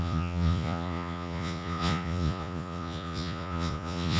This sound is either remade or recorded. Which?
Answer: remade